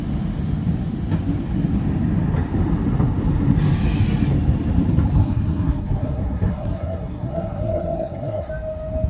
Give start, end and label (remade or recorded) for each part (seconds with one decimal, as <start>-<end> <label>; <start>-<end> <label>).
0.0-5.2 recorded; 5.2-8.5 remade; 8.5-9.1 recorded